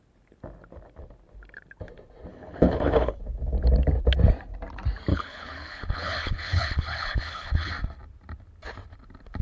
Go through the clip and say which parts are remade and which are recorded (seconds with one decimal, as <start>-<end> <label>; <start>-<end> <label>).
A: 0.0-2.3 recorded; 2.3-3.2 remade; 3.2-5.1 recorded; 5.1-7.7 remade; 7.7-9.4 recorded